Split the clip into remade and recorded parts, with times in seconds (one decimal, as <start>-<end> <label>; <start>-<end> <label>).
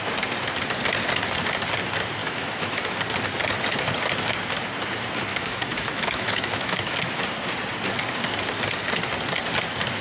0.0-2.2 recorded; 2.2-2.8 remade; 2.8-5.3 recorded; 5.3-7.2 remade; 7.2-10.0 recorded